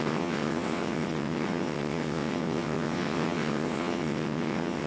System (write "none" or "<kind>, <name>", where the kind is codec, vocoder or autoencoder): vocoder, WaveNeXt